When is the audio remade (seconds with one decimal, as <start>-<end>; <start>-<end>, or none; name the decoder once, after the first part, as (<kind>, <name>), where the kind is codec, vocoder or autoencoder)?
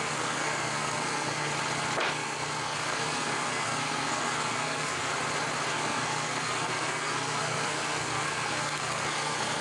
0.0-1.5 (codec, SNAC); 2.1-5.1; 5.7-9.6